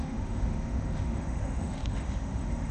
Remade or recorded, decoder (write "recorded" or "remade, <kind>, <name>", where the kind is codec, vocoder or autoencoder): remade, autoencoder, DAC-VAE